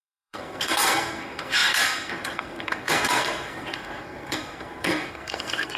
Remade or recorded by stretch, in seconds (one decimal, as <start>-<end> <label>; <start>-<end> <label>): 0.0-5.8 remade